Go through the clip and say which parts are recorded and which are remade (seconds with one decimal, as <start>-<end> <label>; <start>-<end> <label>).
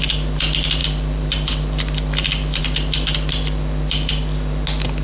0.0-5.0 recorded